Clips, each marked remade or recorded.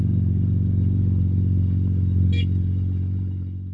remade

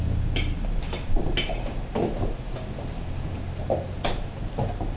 recorded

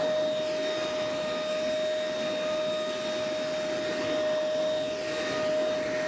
recorded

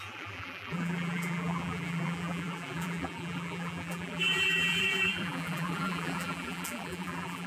remade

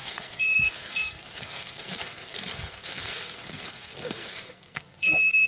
remade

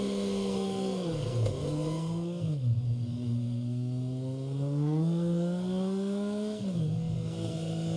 remade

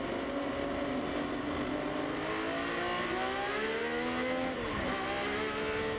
recorded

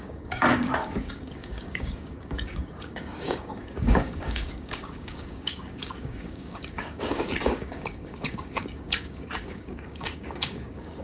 remade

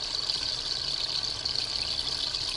recorded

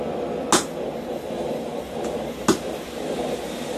recorded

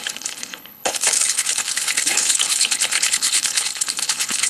remade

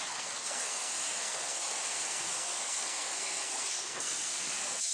remade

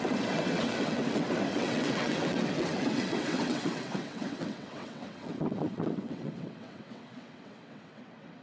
remade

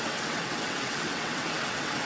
remade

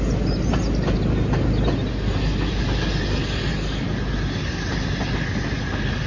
recorded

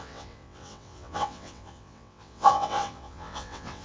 remade